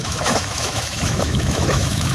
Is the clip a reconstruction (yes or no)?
yes